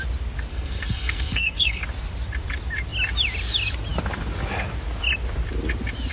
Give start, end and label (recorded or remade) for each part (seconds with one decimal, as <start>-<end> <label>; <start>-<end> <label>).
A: 0.0-0.5 recorded; 0.5-1.8 remade; 1.8-6.1 recorded